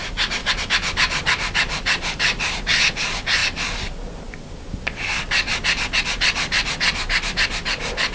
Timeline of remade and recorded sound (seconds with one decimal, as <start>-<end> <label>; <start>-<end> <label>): 0.0-0.4 recorded; 0.4-2.5 remade; 2.5-8.1 recorded